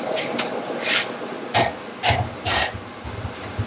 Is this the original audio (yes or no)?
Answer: yes